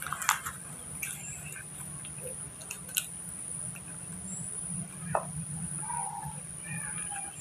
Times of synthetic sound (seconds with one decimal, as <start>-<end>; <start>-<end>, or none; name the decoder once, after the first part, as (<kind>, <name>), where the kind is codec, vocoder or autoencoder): 6.0-6.8 (vocoder, BigVGAN v2)